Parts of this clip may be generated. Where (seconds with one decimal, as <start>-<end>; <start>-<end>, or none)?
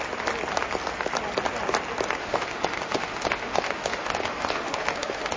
2.2-5.4